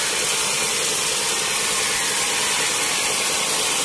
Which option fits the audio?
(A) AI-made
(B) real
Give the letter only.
B